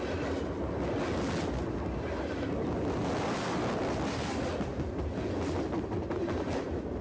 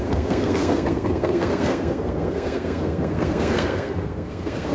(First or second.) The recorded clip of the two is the first